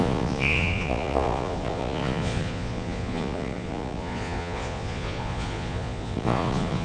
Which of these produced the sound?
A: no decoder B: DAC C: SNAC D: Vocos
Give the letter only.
D